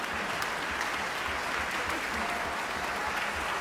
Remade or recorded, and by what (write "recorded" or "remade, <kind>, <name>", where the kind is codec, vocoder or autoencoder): recorded